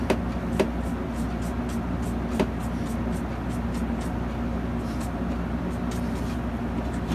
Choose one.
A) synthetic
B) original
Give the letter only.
B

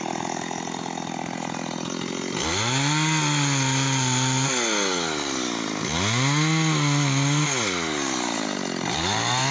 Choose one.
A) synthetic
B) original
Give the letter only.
B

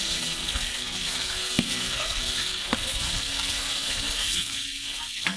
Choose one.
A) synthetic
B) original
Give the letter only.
A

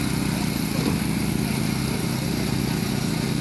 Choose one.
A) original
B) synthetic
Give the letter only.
A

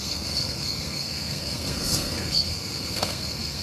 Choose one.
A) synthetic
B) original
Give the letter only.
A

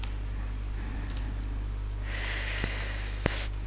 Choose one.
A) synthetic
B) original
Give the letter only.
B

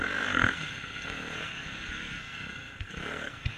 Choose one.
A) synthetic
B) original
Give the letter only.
A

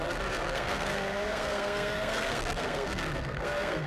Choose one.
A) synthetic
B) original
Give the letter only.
A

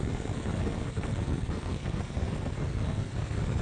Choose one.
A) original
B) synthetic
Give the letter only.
B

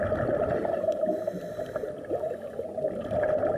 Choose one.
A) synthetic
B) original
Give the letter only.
B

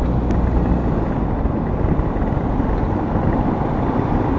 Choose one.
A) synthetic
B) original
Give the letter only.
B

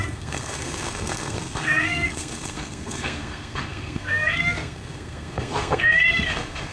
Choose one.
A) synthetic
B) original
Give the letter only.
A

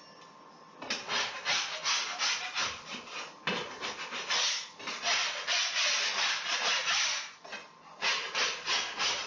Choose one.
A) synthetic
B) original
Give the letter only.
B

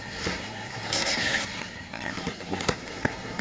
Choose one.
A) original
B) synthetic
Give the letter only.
B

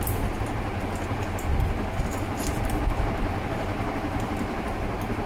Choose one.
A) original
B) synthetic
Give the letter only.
A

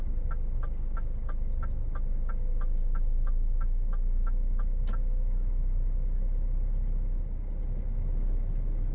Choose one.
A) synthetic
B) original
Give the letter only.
B